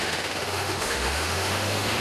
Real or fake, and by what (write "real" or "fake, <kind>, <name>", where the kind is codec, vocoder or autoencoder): fake, autoencoder, DAC-VAE